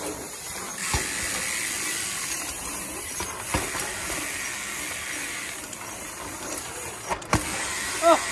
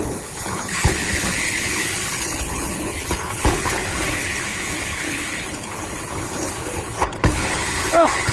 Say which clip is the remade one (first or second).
second